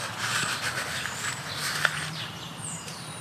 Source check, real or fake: fake